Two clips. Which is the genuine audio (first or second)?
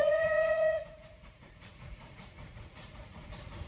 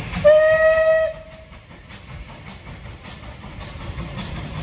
second